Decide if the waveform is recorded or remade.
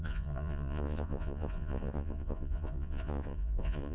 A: remade